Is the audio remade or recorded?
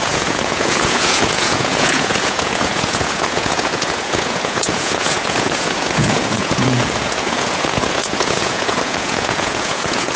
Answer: remade